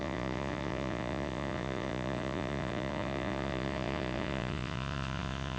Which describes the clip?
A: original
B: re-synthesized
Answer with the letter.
B